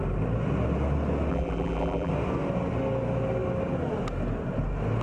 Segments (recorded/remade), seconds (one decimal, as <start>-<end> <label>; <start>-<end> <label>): 0.0-1.3 recorded; 1.3-2.1 remade; 2.1-5.0 recorded